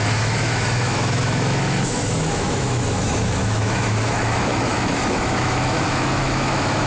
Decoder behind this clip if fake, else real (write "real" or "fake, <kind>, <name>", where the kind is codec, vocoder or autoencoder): fake, autoencoder, DAC-VAE